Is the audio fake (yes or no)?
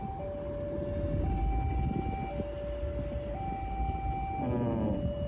no